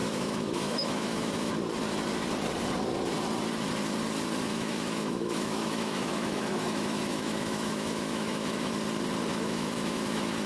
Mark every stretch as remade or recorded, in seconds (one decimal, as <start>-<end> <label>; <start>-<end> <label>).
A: 0.0-1.5 remade; 1.5-4.5 recorded; 4.5-8.7 remade; 8.7-9.3 recorded; 9.3-10.5 remade